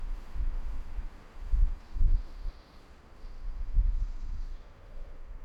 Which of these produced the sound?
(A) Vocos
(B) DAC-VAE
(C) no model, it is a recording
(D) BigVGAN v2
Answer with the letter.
B